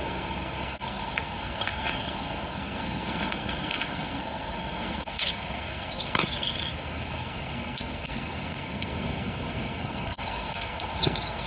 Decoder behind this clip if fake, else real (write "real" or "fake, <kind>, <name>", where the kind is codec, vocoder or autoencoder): fake, codec, SNAC